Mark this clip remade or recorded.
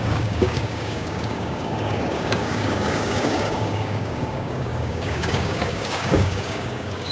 remade